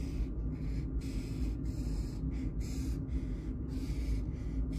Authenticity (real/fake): real